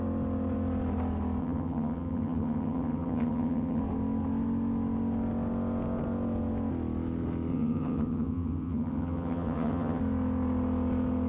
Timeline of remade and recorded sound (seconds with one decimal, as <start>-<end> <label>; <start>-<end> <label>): 0.0-1.4 recorded; 1.4-3.8 remade; 3.8-7.5 recorded; 7.5-10.0 remade; 10.0-11.3 recorded